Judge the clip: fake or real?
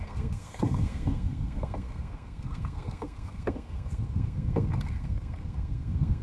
fake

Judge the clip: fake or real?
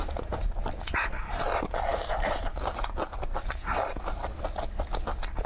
real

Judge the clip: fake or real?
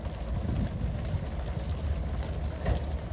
real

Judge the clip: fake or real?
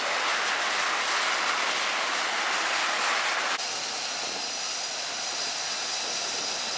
real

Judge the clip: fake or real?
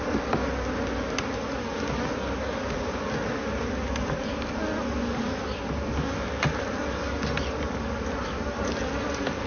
real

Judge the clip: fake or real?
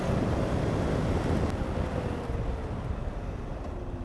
real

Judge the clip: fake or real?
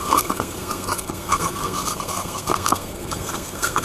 fake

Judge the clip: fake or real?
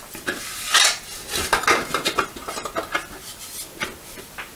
real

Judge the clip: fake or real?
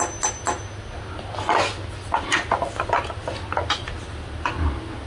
real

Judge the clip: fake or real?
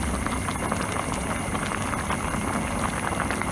real